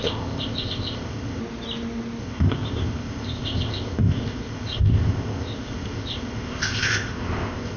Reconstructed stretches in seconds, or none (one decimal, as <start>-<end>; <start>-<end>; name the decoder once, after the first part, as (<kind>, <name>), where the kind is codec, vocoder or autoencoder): 0.0-1.4 (codec, ZipCodec); 2.2-7.8